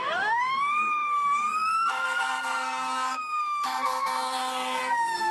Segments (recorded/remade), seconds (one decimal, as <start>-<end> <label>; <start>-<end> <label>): 0.0-5.3 remade